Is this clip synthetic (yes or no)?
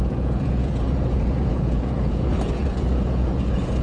yes